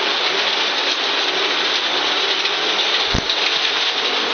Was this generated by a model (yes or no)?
no